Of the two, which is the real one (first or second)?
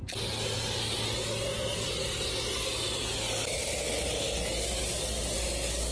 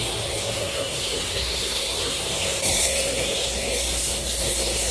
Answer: first